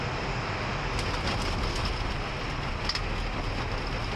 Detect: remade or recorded recorded